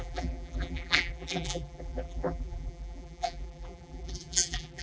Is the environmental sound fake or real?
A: fake